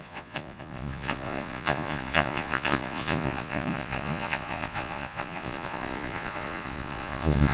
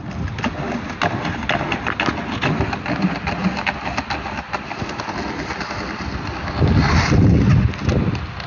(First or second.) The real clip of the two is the second